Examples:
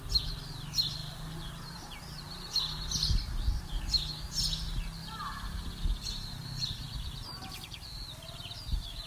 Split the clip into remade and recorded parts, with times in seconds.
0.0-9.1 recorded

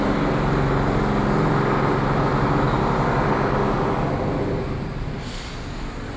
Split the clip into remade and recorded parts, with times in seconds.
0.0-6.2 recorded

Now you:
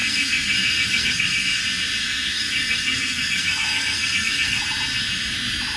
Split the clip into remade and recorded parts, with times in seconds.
0.0-1.6 remade; 1.6-2.0 recorded; 2.0-4.6 remade; 4.6-5.8 recorded

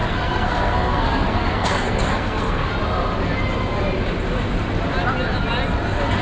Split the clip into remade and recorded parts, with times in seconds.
0.0-2.7 remade; 2.7-6.2 recorded

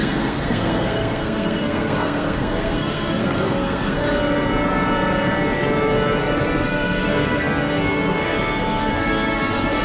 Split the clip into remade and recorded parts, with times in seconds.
0.0-4.2 remade; 4.2-6.2 recorded; 6.2-9.8 remade

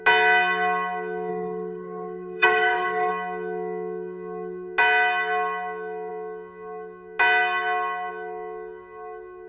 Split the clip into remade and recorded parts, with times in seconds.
0.0-1.3 recorded; 1.3-3.1 remade; 3.1-9.5 recorded

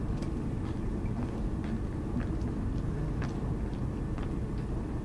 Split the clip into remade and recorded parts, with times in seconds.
0.0-5.0 recorded